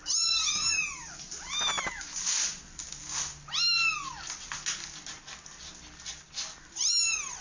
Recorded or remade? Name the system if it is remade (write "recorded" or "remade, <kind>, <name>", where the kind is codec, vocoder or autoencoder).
recorded